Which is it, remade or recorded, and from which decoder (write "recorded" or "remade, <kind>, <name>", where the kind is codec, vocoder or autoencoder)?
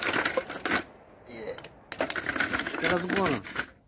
recorded